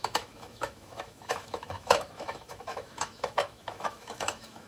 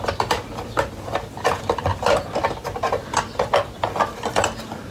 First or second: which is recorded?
second